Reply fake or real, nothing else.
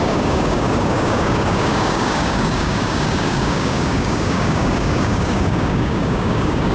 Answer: fake